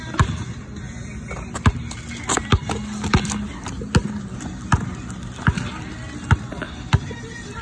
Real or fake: real